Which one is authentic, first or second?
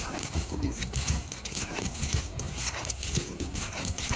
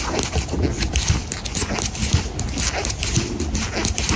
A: second